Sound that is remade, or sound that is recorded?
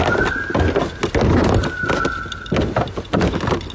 recorded